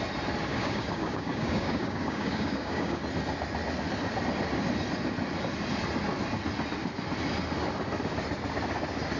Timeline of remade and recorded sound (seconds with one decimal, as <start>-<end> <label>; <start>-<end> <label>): 0.0-0.5 recorded; 0.5-3.0 remade; 3.0-9.2 recorded